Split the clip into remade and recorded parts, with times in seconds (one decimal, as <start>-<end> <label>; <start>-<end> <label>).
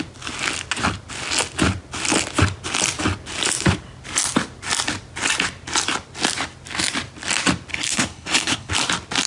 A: 0.0-7.7 recorded; 7.7-8.7 remade; 8.7-9.3 recorded